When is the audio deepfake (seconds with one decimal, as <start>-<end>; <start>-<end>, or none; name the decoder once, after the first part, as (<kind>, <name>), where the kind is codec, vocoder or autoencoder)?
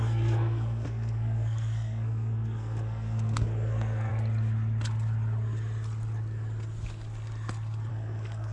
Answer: 0.0-4.1 (codec, SNAC); 7.9-8.5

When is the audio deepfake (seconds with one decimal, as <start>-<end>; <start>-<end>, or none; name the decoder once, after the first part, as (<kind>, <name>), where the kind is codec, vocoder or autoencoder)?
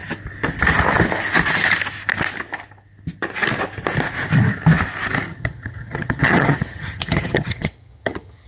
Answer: 5.3-8.5 (vocoder, HiFi-GAN)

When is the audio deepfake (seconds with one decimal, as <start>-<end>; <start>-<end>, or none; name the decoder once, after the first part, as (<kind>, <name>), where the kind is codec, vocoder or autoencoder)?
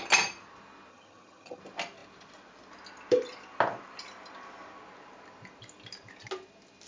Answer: 0.9-1.6 (vocoder, HiFi-GAN)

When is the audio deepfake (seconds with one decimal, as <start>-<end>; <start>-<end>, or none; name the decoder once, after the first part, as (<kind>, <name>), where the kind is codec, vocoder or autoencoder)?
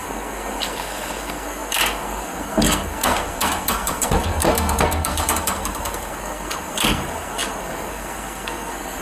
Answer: 0.0-9.0 (codec, SNAC)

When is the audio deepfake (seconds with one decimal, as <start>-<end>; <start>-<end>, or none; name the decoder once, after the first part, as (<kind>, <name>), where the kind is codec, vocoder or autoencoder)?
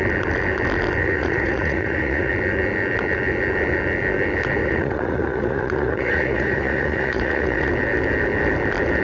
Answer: 1.0-2.3 (vocoder, Vocos); 4.6-7.7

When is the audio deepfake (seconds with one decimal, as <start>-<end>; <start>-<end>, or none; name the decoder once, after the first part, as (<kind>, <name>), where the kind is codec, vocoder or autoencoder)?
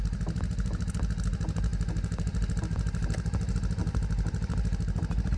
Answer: none